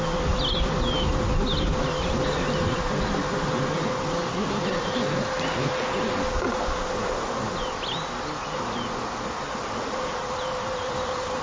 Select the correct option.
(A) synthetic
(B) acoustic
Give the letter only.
B